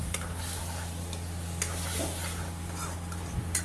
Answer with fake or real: real